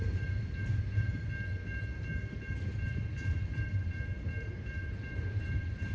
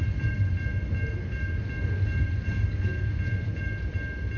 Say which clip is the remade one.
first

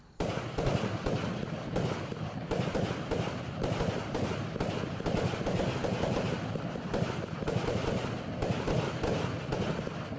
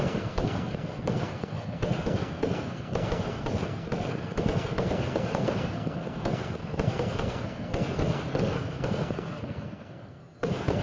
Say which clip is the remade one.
second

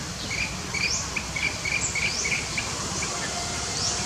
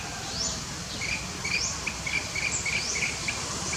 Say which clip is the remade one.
second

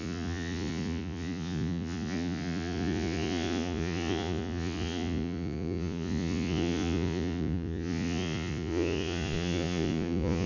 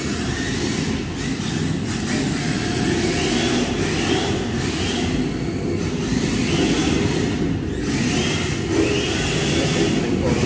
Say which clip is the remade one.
first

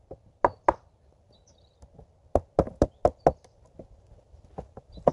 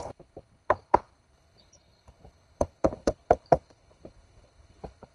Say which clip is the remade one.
second